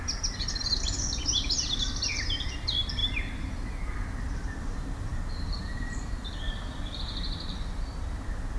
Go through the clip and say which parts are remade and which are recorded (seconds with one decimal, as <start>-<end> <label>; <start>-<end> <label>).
0.0-3.0 remade; 3.0-4.2 recorded; 4.2-8.6 remade